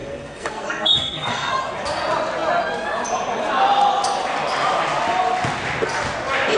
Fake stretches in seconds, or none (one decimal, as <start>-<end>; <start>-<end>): 0.0-1.5